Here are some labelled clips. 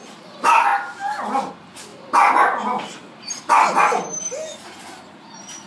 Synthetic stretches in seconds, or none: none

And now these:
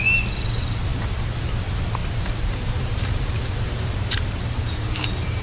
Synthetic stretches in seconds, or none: 2.0-5.4 (vocoder, BigVGAN v2)

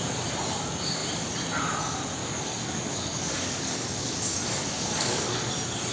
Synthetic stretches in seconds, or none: 2.2-5.5 (codec, DAC)

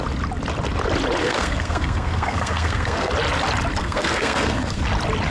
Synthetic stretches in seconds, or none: 1.2-3.1 (codec, SNAC); 3.8-4.8

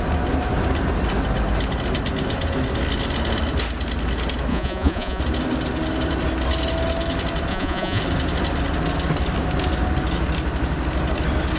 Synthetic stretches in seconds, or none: 4.5-5.2 (vocoder, Vocos); 7.5-8.0

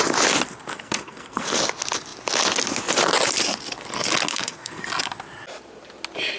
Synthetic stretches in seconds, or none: 0.7-1.6 (codec, SNAC); 4.3-4.8